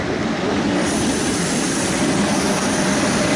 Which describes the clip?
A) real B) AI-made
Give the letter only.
B